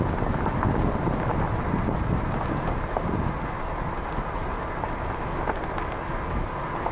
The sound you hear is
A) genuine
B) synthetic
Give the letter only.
A